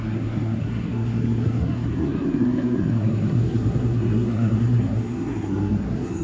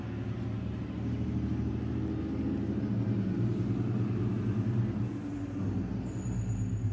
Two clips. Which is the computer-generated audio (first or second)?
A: first